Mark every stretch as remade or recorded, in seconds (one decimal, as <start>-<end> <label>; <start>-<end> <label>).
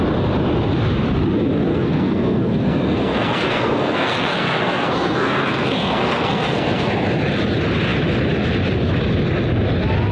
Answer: 0.0-1.7 recorded; 1.7-6.9 remade; 6.9-10.1 recorded